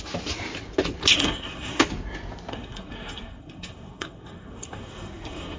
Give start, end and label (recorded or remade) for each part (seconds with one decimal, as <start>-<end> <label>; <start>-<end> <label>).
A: 0.0-1.1 recorded; 1.1-1.8 remade; 1.8-2.5 recorded; 2.5-5.6 remade